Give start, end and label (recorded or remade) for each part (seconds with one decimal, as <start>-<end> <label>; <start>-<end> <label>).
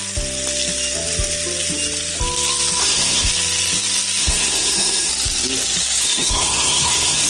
0.0-2.8 recorded; 2.8-3.3 remade; 3.3-4.2 recorded; 4.2-5.1 remade; 5.1-6.0 recorded; 6.0-7.3 remade